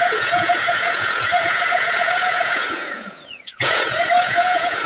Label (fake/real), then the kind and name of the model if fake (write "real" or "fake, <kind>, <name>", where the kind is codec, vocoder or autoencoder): fake, vocoder, Vocos